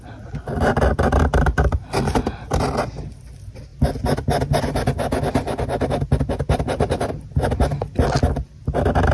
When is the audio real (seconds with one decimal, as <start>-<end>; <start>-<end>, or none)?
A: 0.0-9.1